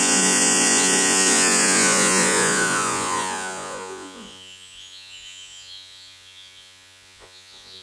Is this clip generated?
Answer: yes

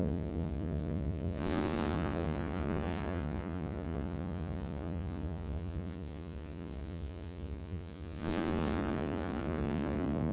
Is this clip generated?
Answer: yes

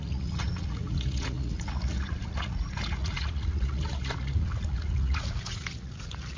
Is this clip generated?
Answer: yes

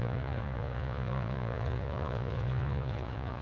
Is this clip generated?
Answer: yes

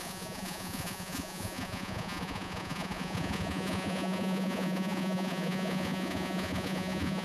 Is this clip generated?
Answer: yes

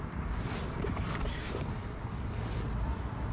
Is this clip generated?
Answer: no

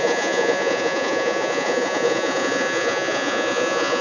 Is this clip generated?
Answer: yes